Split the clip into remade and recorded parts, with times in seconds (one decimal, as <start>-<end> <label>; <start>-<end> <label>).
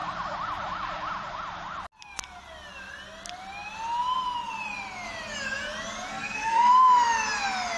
0.0-6.1 recorded; 6.1-6.7 remade; 6.7-7.8 recorded